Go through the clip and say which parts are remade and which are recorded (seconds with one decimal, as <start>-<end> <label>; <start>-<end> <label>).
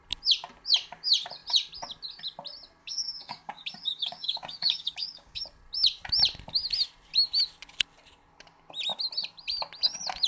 0.0-2.8 recorded; 2.8-5.4 remade; 5.4-10.3 recorded